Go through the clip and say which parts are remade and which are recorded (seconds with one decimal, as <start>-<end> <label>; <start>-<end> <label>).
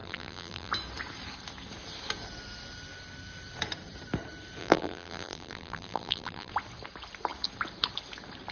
0.0-0.7 remade; 0.7-4.6 recorded; 4.6-6.5 remade; 6.5-8.5 recorded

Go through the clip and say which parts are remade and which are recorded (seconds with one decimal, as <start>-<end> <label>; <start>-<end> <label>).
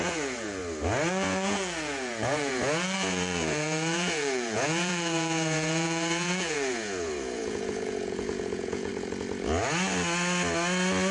0.0-0.6 remade; 0.6-1.1 recorded; 1.1-8.9 remade; 8.9-11.1 recorded